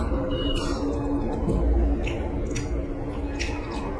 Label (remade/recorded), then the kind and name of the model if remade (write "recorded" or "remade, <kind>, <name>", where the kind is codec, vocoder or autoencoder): recorded